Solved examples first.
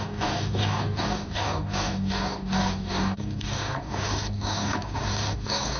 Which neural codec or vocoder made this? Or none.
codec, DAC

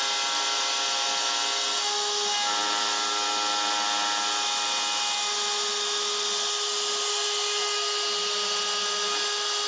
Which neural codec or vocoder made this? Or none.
none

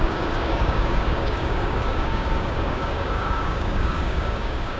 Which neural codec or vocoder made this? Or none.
codec, DAC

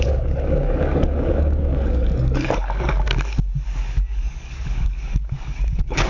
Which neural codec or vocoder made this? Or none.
codec, DAC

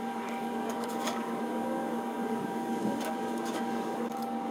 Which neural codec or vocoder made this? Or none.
codec, DAC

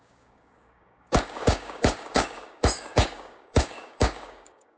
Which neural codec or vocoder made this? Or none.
codec, DAC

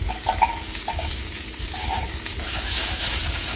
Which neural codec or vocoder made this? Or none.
codec, DAC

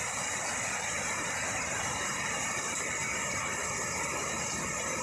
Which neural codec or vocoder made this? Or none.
none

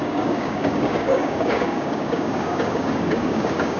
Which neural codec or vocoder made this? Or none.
codec, DAC